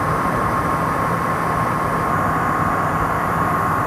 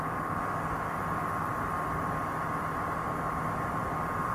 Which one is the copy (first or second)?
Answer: first